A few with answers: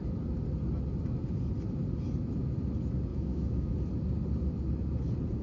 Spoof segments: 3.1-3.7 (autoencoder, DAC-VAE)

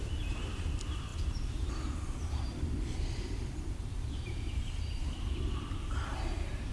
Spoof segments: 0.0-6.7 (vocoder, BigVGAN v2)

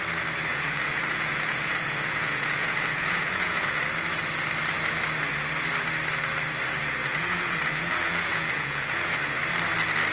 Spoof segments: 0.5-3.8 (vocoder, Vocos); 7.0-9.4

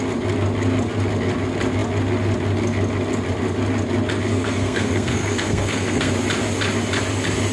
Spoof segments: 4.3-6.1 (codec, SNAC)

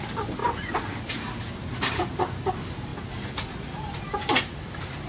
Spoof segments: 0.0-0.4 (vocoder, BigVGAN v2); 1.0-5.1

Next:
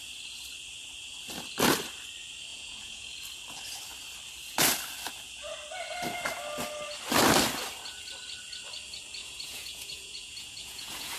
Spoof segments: 2.5-3.1 (vocoder, Vocos); 9.2-11.2

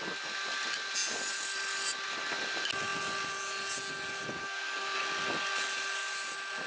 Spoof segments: 4.4-5.0 (codec, SNAC)

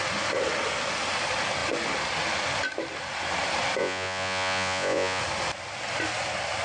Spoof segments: 3.8-5.2 (vocoder, Vocos)